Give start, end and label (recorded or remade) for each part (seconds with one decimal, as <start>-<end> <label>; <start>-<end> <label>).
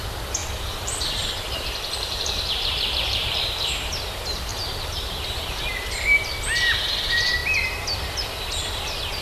0.0-0.4 recorded; 0.4-3.7 remade; 3.7-4.5 recorded; 4.5-5.1 remade; 5.1-9.2 recorded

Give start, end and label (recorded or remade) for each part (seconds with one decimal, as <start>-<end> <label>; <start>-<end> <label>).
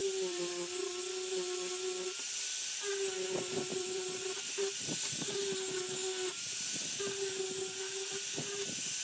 0.0-0.5 remade; 0.5-3.7 recorded; 3.7-4.6 remade; 4.6-9.0 recorded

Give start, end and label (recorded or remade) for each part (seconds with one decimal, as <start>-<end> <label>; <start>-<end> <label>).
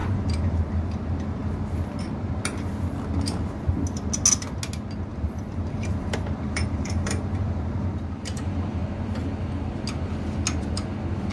0.0-0.6 remade; 0.6-5.1 recorded; 5.1-8.8 remade; 8.8-11.3 recorded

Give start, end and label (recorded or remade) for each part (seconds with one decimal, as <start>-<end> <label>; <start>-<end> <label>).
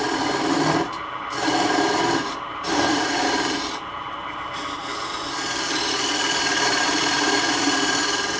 0.0-8.4 remade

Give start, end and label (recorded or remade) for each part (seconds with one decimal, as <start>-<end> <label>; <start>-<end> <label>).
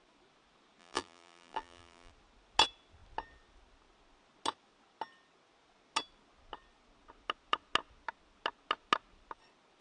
0.0-0.8 recorded; 0.8-2.1 remade; 2.1-9.8 recorded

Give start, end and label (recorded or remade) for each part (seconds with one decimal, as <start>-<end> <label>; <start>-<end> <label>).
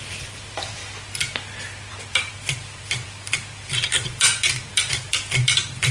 0.0-0.8 remade; 0.8-1.9 recorded; 1.9-5.9 remade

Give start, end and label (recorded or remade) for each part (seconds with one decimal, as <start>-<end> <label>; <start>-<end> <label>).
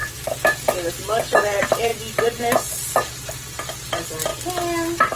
0.0-0.9 remade; 0.9-5.2 recorded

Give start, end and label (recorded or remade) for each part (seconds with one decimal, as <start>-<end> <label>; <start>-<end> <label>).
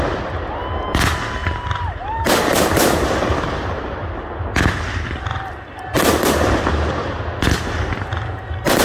0.0-1.4 recorded; 1.4-3.1 remade; 3.1-8.8 recorded